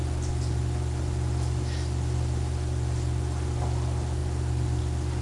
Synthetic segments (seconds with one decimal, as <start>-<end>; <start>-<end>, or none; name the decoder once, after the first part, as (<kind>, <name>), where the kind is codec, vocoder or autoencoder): none